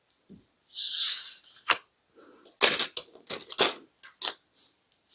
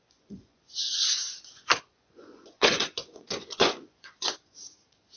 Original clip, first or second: first